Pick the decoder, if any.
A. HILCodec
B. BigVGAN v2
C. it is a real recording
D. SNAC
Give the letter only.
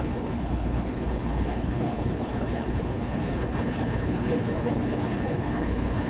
A